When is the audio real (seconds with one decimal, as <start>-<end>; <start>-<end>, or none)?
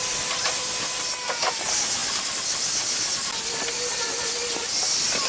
0.0-5.3